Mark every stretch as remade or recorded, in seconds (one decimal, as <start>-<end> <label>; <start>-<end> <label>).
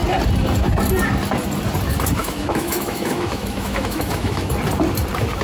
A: 0.0-2.2 recorded; 2.2-4.5 remade; 4.5-5.4 recorded